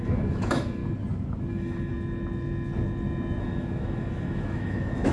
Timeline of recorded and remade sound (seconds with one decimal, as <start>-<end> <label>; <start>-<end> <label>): 0.0-0.8 remade; 0.8-1.5 recorded; 1.5-1.9 remade; 1.9-3.4 recorded; 3.4-5.1 remade